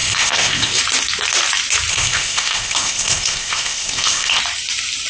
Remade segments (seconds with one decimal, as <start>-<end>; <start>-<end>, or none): 0.0-0.8; 1.9-4.4